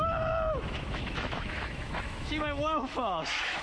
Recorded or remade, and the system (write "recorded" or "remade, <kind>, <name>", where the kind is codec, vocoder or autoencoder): remade, autoencoder, DAC-VAE